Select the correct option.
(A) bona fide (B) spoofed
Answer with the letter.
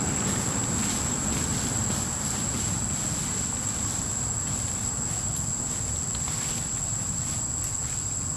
A